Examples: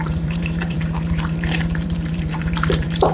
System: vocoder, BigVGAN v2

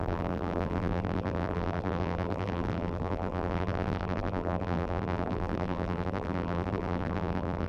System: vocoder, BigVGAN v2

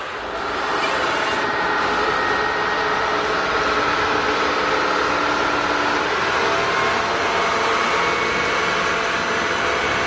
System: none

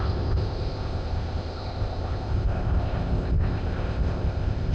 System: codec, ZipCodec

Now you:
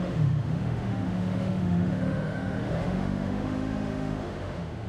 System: autoencoder, DAC-VAE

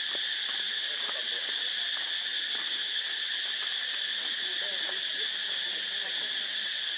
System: none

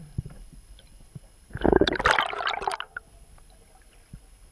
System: none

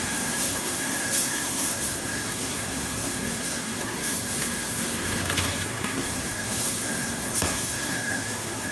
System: codec, SNAC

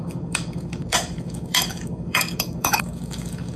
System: codec, DAC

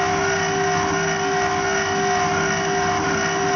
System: none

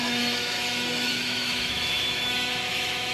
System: autoencoder, DAC-VAE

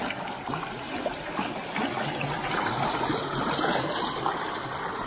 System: none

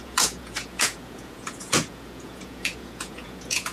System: vocoder, Vocos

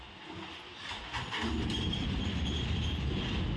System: none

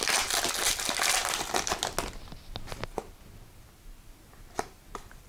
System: none